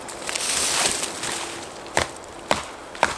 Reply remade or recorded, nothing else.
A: recorded